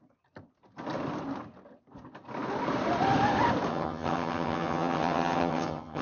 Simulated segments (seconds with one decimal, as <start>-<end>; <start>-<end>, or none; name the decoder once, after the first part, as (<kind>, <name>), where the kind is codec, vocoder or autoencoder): 3.7-6.0 (vocoder, HiFi-GAN)